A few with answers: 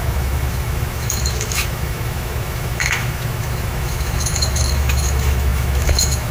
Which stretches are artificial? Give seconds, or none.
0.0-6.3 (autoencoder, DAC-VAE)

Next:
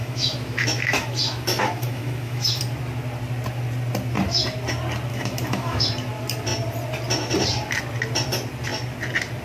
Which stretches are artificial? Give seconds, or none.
0.0-2.6 (autoencoder, DAC-VAE); 5.1-5.8

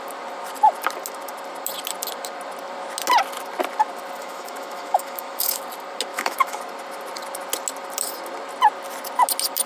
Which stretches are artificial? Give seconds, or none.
4.2-5.6 (autoencoder, DAC-VAE); 6.1-6.6

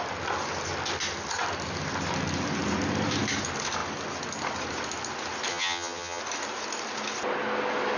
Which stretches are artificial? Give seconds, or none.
5.5-6.2 (vocoder, HiFi-GAN)